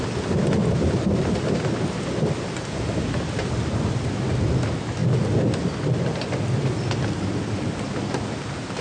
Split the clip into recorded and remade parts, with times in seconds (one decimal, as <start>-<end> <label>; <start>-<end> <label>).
0.0-8.8 recorded